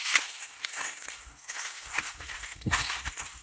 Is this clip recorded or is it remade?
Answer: remade